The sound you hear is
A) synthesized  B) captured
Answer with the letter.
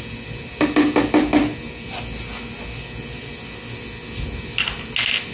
B